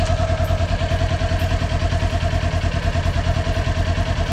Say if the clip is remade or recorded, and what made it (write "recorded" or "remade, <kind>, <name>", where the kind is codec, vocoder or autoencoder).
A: recorded